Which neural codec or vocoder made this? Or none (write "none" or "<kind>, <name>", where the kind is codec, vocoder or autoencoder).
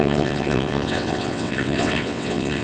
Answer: vocoder, WaveNeXt